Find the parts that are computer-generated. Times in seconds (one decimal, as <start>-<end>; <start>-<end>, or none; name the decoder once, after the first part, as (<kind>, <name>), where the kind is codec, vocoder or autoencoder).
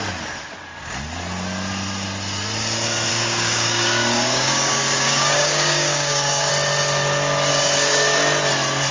3.1-6.5 (codec, DAC); 7.5-8.2